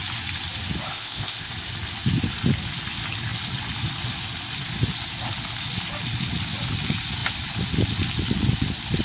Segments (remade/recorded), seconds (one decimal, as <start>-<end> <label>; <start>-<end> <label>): 0.0-0.9 recorded; 0.9-1.5 remade; 1.5-9.0 recorded